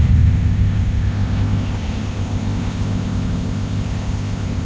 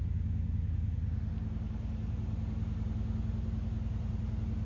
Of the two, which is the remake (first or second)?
first